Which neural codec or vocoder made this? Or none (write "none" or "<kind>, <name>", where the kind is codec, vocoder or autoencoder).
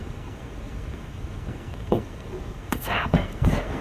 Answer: codec, SNAC